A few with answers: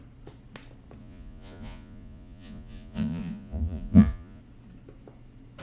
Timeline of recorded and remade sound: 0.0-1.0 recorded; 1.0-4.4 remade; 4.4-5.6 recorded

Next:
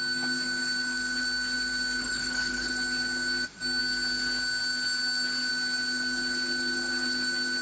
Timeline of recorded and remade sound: 0.0-2.0 recorded; 2.0-2.7 remade; 2.7-7.6 recorded

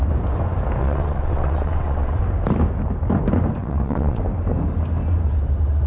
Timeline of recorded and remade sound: 0.0-0.8 recorded; 0.8-2.2 remade; 2.2-3.6 recorded; 3.6-4.2 remade; 4.2-5.9 recorded

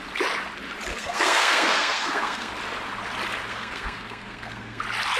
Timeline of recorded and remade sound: 0.0-0.9 recorded; 0.9-2.5 remade; 2.5-3.5 recorded; 3.5-4.8 remade; 4.8-5.2 recorded

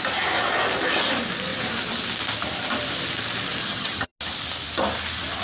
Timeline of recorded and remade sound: 0.0-3.6 recorded; 3.6-4.1 remade; 4.1-5.4 recorded

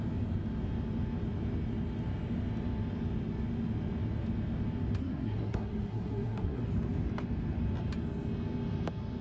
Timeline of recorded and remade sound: 0.0-5.0 recorded; 5.0-6.6 remade; 6.6-9.2 recorded